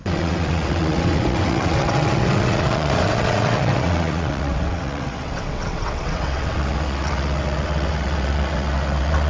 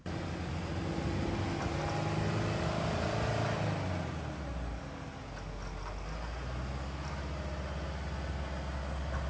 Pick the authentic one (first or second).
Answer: second